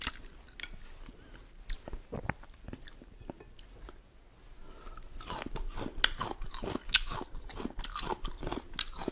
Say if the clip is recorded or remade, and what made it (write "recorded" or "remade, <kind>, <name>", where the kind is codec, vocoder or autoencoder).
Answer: recorded